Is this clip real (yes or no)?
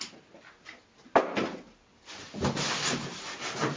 yes